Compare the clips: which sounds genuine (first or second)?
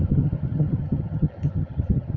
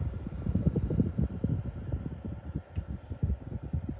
second